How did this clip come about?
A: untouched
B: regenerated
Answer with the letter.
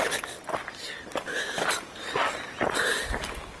A